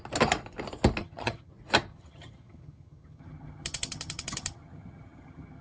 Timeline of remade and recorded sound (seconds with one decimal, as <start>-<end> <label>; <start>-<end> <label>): 0.0-1.0 recorded; 1.0-1.5 remade; 1.5-1.9 recorded; 1.9-5.6 remade